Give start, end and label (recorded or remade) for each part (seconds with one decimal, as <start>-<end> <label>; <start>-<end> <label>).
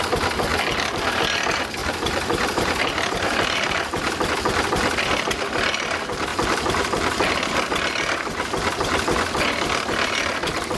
0.0-0.5 recorded; 0.5-1.2 remade; 1.2-1.8 recorded; 1.8-4.3 remade; 4.3-6.3 recorded; 6.3-7.3 remade; 7.3-10.8 recorded